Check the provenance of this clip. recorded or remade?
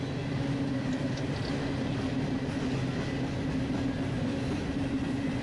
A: recorded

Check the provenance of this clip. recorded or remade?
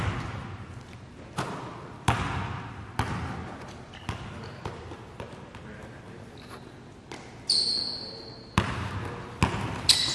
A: recorded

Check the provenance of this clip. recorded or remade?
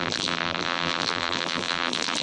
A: remade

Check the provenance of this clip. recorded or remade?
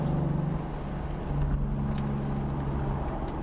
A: recorded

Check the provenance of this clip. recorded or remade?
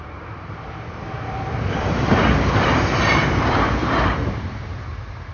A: remade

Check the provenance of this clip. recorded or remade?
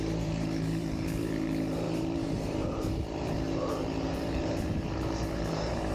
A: remade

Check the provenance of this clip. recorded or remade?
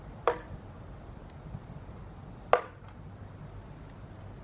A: recorded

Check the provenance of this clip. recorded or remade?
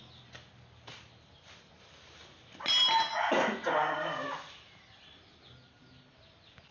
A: recorded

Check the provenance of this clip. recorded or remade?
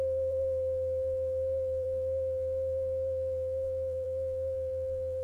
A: remade